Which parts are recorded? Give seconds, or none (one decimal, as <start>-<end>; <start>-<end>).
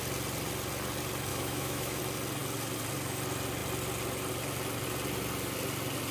0.0-1.3; 2.0-6.1